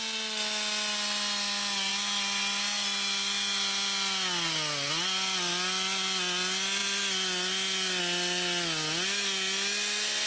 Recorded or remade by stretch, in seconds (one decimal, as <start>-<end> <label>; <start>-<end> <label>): 0.0-10.3 recorded

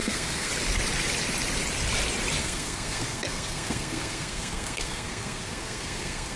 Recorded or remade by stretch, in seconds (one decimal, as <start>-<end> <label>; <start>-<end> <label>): 0.0-0.5 remade; 0.5-2.4 recorded; 2.4-6.4 remade

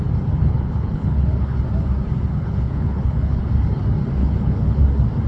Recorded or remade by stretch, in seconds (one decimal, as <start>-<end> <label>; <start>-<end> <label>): 0.0-0.4 recorded; 0.4-1.6 remade; 1.6-2.3 recorded; 2.3-3.5 remade; 3.5-4.2 recorded; 4.2-4.8 remade; 4.8-5.3 recorded

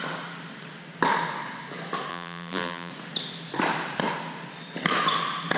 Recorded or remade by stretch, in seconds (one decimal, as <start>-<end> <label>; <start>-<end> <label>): 0.0-2.1 recorded; 2.1-2.9 remade; 2.9-5.6 recorded

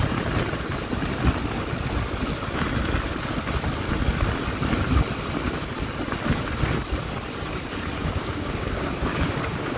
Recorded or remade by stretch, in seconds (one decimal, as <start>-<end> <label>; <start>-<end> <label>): 0.0-8.0 recorded; 8.0-9.8 remade